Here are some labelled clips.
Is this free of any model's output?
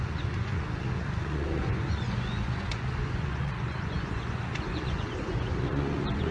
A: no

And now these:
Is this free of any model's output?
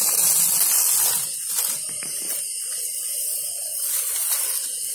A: yes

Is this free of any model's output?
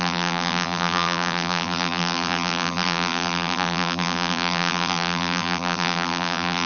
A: no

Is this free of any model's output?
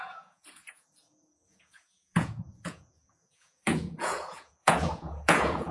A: no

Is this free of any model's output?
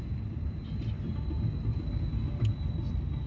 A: yes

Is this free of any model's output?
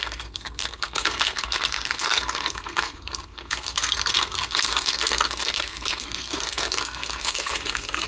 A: no